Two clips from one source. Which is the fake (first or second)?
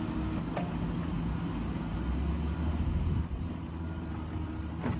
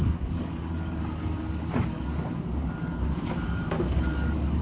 second